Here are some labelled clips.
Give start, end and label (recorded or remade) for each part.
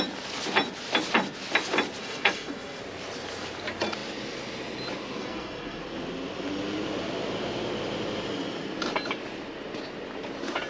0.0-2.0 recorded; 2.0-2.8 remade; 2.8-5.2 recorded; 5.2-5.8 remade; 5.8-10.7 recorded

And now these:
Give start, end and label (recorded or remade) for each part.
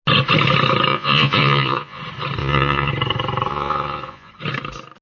0.0-0.9 recorded; 0.9-2.0 remade; 2.0-2.4 recorded; 2.4-2.9 remade; 2.9-3.5 recorded; 3.5-4.3 remade; 4.3-5.0 recorded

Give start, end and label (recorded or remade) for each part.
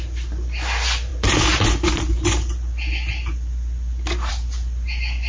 0.0-5.3 recorded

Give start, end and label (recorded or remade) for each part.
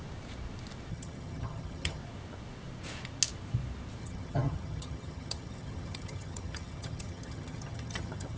0.0-0.9 recorded; 0.9-2.0 remade; 2.0-4.0 recorded; 4.0-8.4 remade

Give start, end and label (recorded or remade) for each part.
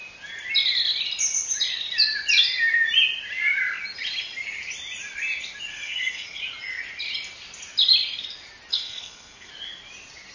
0.0-5.7 recorded; 5.7-6.4 remade; 6.4-8.7 recorded; 8.7-9.5 remade; 9.5-10.3 recorded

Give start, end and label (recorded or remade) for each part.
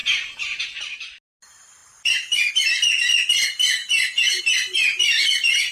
0.0-5.7 recorded